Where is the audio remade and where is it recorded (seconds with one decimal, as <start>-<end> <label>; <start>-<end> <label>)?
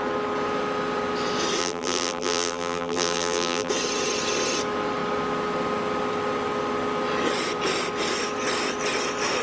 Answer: 0.0-1.6 recorded; 1.6-3.7 remade; 3.7-9.4 recorded